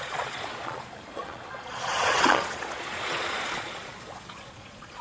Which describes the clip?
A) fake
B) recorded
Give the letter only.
A